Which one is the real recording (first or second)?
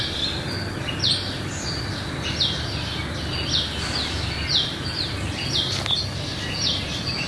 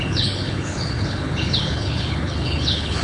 first